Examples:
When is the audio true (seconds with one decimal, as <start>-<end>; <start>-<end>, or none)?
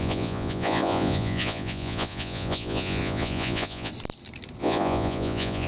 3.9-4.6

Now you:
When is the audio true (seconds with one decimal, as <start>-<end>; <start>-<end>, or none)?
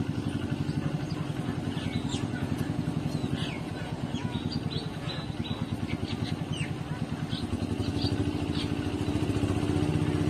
0.0-2.3; 5.3-10.3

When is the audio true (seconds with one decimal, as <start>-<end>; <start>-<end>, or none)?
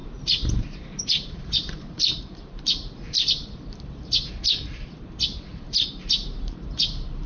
4.3-5.5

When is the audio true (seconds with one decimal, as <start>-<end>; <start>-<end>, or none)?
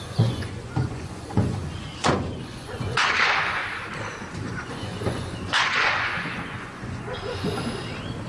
3.6-4.3; 7.6-8.3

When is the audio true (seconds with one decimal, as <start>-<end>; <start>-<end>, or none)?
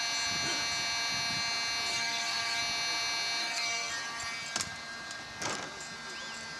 0.0-1.9; 2.6-3.4; 3.9-6.6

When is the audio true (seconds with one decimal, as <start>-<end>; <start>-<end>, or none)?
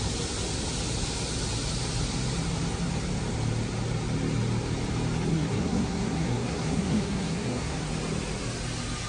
0.0-5.3; 7.9-9.1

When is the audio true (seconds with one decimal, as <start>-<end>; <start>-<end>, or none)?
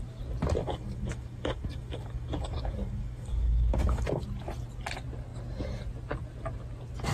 0.0-0.6; 4.2-7.1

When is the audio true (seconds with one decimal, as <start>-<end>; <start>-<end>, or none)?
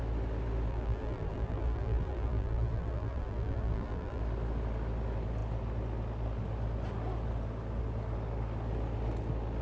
0.0-0.7; 4.2-9.6